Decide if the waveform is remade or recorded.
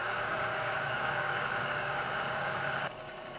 remade